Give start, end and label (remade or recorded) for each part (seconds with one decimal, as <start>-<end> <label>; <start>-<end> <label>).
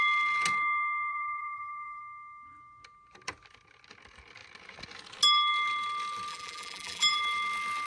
0.0-1.1 recorded; 1.1-2.0 remade; 2.0-6.3 recorded; 6.3-7.2 remade; 7.2-7.9 recorded